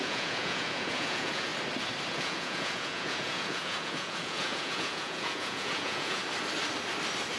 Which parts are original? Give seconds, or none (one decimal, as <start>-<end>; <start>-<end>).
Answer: 1.5-2.1; 6.2-7.4